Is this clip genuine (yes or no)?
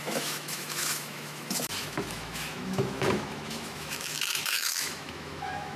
no